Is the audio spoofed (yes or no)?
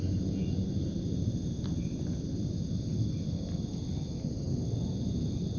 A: no